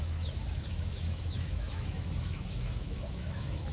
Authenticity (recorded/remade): remade